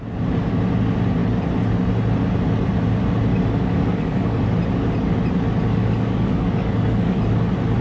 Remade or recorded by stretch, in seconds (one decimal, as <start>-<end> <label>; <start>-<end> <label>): 0.0-3.3 recorded; 3.3-4.4 remade; 4.4-5.7 recorded; 5.7-7.2 remade; 7.2-7.8 recorded